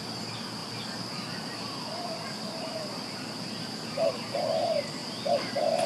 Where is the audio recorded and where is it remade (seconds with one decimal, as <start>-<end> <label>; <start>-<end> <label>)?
0.0-5.9 recorded

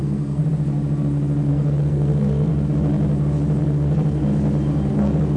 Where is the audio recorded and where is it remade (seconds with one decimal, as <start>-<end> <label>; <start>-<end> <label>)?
0.0-0.4 remade; 0.4-1.5 recorded; 1.5-2.5 remade; 2.5-3.6 recorded; 3.6-4.2 remade; 4.2-4.9 recorded; 4.9-5.4 remade

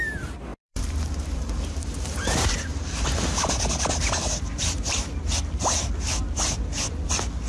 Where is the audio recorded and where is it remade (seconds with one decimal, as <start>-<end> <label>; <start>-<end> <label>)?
0.0-0.5 recorded; 0.5-5.0 remade; 5.0-7.5 recorded

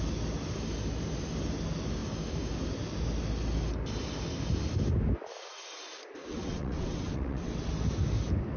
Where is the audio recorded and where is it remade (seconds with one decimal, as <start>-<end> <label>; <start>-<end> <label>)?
0.0-6.2 recorded; 6.2-7.7 remade; 7.7-8.6 recorded

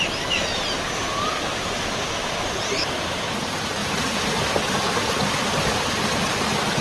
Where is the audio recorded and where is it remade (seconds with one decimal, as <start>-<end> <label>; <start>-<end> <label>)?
0.0-3.8 recorded; 3.8-4.3 remade; 4.3-5.4 recorded; 5.4-6.0 remade; 6.0-6.8 recorded

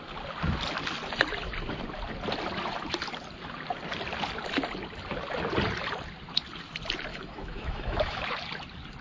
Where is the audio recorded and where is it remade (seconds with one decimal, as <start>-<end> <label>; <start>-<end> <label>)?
0.0-7.1 recorded; 7.1-8.2 remade; 8.2-9.0 recorded

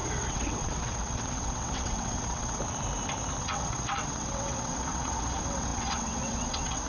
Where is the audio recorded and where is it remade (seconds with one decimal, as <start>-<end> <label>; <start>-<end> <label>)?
0.0-2.6 remade; 2.6-3.4 recorded; 3.4-6.9 remade